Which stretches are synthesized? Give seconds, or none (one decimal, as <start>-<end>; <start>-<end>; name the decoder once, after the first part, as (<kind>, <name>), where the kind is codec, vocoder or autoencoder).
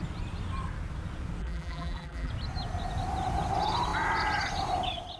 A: 1.4-2.3 (vocoder, BigVGAN v2)